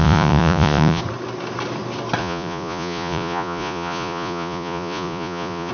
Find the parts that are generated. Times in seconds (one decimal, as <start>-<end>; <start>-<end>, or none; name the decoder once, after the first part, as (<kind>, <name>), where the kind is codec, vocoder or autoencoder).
0.0-1.0 (vocoder, Vocos); 2.2-5.7